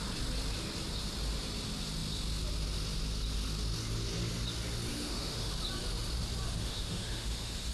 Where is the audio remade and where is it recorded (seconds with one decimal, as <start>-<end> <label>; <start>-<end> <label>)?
0.0-4.9 recorded; 4.9-5.5 remade; 5.5-6.6 recorded; 6.6-7.7 remade